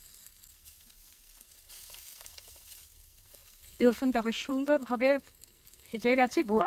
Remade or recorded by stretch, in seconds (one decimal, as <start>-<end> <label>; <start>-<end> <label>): 0.0-6.7 remade